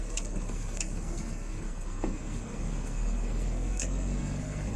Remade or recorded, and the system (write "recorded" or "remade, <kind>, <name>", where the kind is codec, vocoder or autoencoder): remade, codec, SNAC